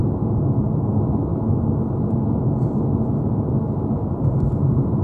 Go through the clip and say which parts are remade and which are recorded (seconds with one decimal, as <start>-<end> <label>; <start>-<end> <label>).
0.0-1.3 recorded; 1.3-1.9 remade; 1.9-5.0 recorded